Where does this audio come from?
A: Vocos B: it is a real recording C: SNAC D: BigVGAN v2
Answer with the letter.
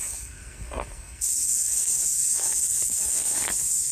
C